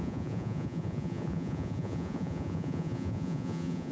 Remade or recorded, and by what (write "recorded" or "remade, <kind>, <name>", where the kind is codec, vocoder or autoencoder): remade, vocoder, Vocos